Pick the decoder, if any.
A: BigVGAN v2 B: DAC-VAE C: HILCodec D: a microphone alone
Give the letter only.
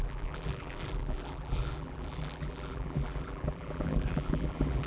A